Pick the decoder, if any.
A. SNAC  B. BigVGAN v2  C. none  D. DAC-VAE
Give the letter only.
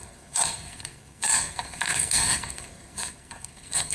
A